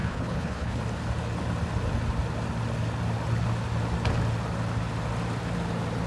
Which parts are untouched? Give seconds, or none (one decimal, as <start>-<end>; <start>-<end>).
0.8-6.1

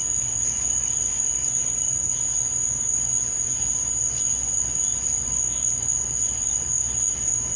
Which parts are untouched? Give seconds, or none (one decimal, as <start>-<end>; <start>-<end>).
2.1-4.0; 6.7-7.6